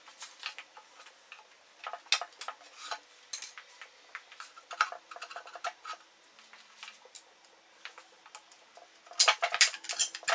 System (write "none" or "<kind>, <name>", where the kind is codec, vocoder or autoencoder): none